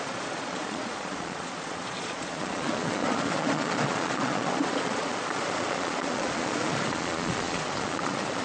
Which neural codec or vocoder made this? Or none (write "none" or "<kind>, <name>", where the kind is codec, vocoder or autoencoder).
vocoder, Vocos